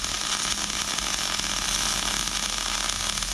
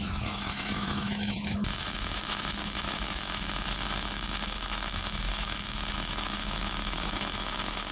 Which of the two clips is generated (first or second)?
second